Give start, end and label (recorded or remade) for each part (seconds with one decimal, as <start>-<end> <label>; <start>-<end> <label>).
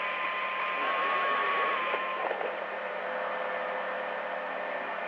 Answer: 0.0-1.4 recorded; 1.4-3.0 remade; 3.0-5.1 recorded